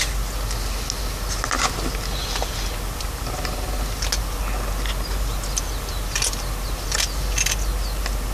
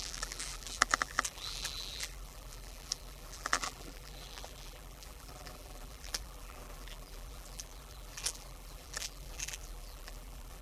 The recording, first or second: first